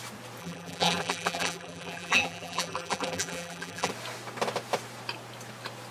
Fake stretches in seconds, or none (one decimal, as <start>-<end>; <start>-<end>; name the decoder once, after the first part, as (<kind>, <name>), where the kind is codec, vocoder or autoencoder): 0.4-3.9 (vocoder, BigVGAN v2)